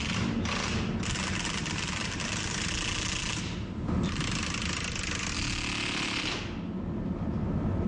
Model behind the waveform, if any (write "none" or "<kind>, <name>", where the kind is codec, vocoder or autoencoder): none